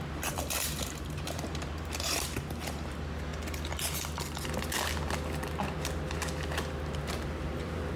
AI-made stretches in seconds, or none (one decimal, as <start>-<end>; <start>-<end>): 0.0-3.3; 6.7-8.0